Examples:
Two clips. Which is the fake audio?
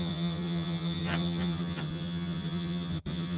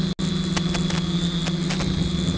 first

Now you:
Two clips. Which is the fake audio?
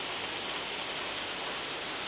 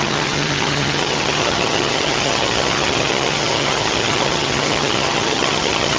second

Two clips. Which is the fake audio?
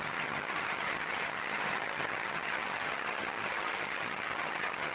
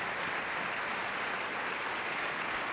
first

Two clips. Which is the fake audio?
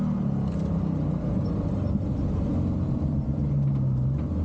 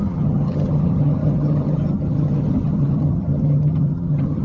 second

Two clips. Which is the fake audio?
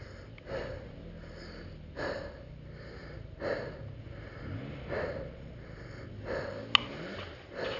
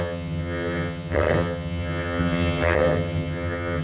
second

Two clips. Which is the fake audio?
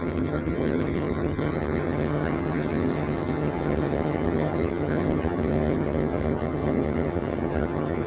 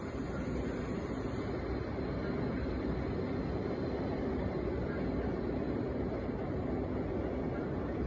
first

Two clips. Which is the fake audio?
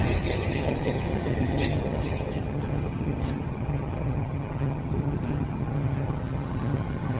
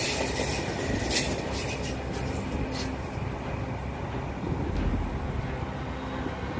first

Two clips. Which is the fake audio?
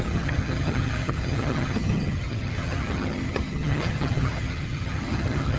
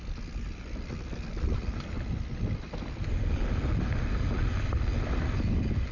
first